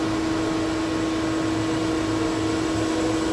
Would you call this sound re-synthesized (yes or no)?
no